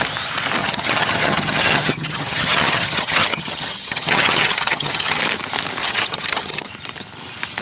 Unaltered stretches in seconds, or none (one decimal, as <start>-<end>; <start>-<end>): 0.0-0.6; 5.2-5.8; 6.7-7.6